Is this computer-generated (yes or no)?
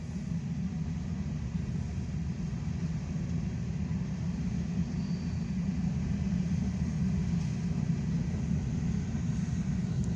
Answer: no